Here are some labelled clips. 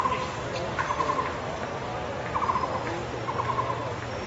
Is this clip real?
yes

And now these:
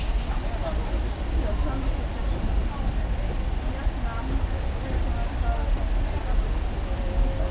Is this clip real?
yes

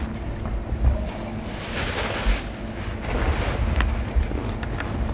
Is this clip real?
yes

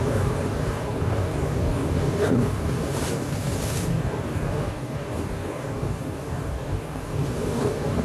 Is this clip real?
no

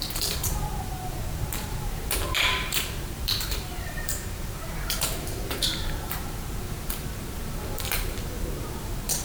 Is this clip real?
no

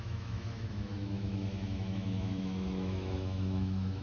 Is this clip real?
no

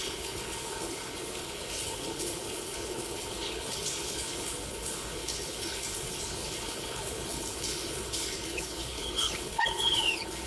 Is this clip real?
no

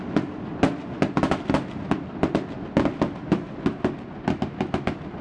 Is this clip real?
yes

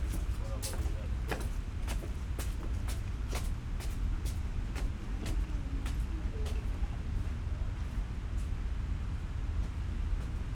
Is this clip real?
yes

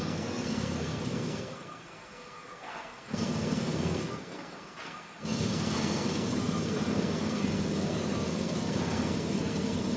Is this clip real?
no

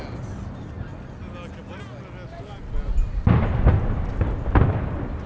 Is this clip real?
yes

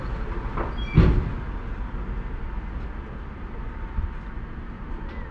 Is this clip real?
yes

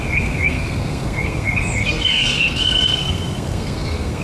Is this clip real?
no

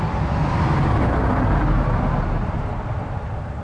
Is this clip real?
yes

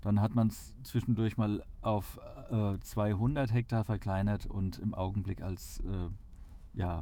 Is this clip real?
no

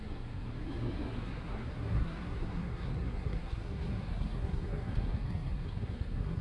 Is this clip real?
no